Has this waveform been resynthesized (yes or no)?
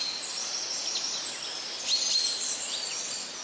no